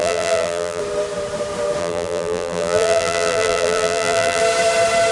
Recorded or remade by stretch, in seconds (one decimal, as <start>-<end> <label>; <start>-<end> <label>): 0.0-0.8 remade; 0.8-1.8 recorded; 1.8-4.4 remade; 4.4-5.1 recorded